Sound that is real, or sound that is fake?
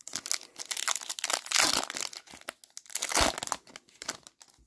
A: real